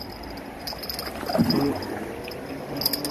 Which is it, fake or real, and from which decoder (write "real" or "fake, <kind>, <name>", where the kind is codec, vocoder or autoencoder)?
real